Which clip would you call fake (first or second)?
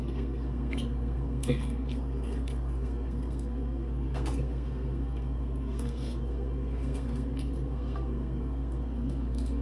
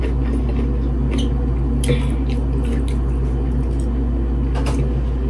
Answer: first